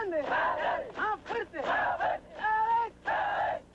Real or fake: real